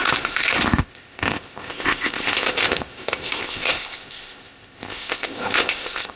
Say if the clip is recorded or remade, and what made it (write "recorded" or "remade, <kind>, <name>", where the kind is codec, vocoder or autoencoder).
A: remade, codec, ZipCodec